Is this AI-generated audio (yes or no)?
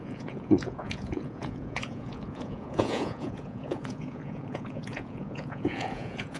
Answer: yes